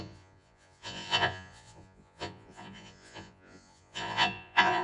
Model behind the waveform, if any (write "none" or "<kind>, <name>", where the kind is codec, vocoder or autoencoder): vocoder, Vocos